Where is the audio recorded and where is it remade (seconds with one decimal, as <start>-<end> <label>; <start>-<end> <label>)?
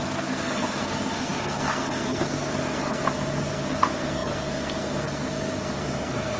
0.0-6.4 remade